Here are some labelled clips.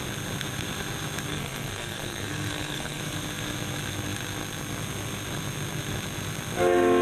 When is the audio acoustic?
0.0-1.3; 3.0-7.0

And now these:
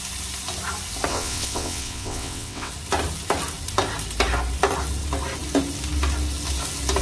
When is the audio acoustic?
0.0-1.1; 2.7-7.0